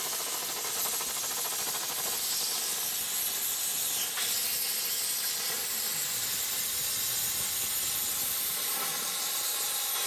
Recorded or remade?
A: recorded